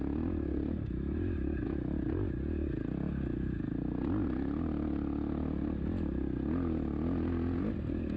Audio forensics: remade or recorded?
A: recorded